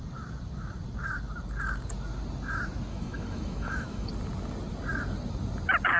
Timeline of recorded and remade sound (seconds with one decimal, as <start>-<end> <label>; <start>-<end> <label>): 0.0-2.9 recorded; 2.9-4.1 remade; 4.1-6.0 recorded